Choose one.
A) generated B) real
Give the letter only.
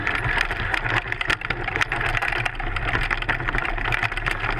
B